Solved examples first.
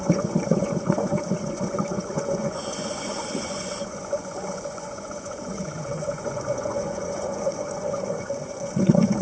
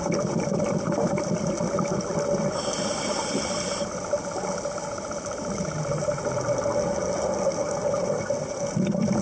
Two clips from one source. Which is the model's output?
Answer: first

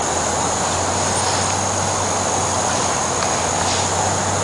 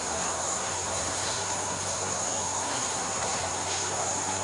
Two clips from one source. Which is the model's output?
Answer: second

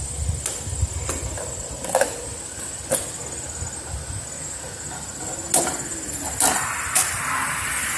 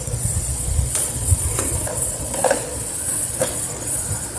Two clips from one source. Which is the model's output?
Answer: second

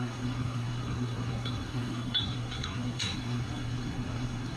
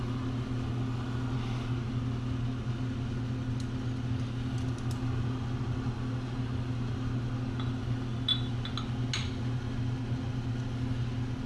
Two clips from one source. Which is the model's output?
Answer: first